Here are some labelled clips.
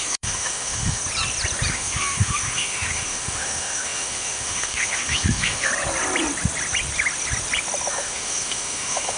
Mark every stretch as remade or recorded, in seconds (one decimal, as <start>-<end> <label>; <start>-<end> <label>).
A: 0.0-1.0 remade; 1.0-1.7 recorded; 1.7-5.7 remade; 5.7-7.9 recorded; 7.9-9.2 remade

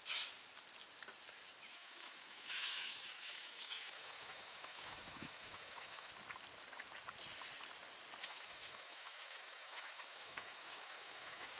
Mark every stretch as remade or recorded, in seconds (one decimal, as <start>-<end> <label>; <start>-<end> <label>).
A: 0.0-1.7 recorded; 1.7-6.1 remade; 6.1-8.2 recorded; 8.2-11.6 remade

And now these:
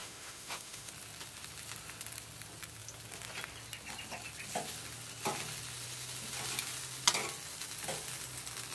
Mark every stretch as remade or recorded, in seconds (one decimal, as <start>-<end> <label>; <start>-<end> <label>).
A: 0.0-0.9 remade; 0.9-8.7 recorded

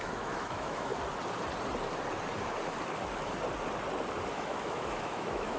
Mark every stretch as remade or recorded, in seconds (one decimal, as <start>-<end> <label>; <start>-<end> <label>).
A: 0.0-0.9 remade; 0.9-4.3 recorded; 4.3-5.6 remade

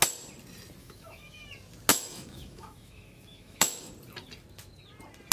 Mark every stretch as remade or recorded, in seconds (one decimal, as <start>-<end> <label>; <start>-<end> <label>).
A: 0.0-0.8 recorded; 0.8-1.4 remade; 1.4-1.9 recorded; 1.9-3.9 remade; 3.9-5.3 recorded